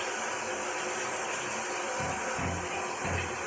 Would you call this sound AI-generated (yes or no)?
no